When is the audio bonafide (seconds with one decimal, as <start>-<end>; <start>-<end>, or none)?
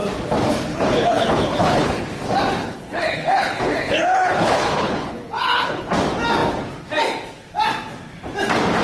0.0-0.7; 2.0-2.6; 5.9-8.8